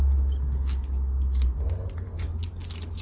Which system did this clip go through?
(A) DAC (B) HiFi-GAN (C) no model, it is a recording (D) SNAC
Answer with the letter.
C